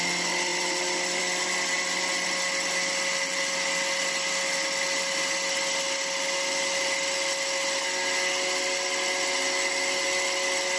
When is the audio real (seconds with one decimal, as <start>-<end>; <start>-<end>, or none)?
0.0-10.8